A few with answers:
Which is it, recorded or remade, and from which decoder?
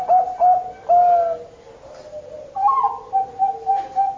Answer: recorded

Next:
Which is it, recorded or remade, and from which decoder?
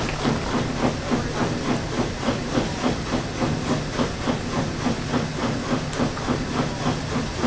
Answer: recorded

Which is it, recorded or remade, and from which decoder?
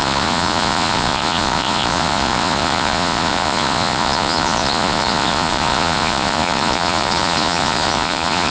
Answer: remade, vocoder, Vocos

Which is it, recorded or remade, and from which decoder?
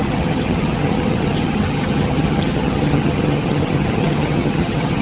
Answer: remade, vocoder, HiFi-GAN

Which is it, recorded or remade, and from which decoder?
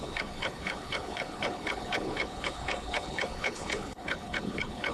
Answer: remade, codec, HILCodec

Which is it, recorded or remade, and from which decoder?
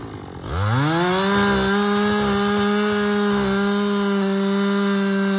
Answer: recorded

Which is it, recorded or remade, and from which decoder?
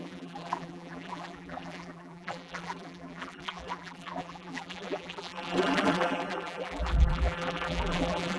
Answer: remade, vocoder, BigVGAN v2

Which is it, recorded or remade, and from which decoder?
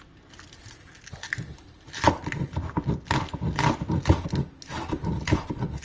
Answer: recorded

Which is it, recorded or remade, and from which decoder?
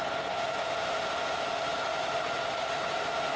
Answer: recorded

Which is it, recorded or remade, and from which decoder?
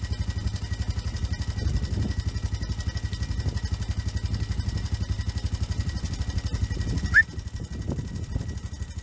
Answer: recorded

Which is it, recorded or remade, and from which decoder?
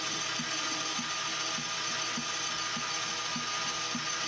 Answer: recorded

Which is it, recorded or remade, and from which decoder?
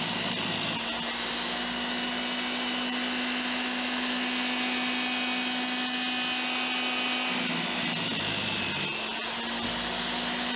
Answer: recorded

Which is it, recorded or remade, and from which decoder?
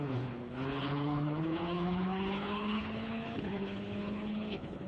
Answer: remade, codec, HILCodec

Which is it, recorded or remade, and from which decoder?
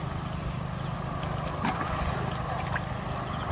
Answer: recorded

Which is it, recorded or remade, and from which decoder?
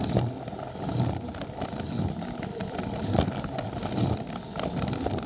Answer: recorded